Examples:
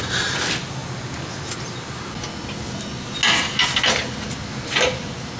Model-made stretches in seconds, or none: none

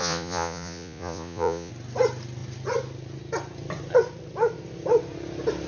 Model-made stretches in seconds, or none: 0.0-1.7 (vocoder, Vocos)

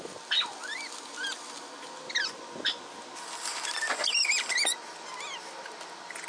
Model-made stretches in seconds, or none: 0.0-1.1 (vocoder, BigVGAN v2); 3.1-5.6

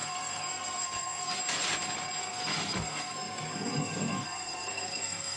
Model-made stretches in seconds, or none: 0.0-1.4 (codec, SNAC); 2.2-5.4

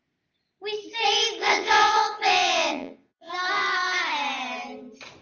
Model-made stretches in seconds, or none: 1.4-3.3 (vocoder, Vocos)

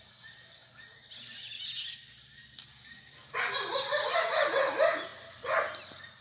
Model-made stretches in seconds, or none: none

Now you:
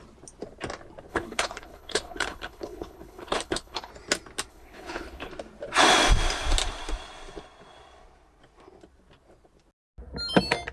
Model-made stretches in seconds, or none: 1.1-3.9 (codec, HILCodec); 4.5-5.3

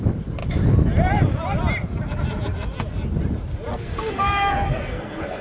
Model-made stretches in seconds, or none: 3.7-5.4 (codec, SNAC)